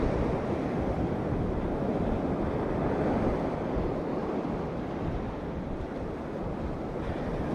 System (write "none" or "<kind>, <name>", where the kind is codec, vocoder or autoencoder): none